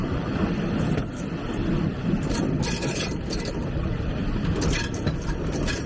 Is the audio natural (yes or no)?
no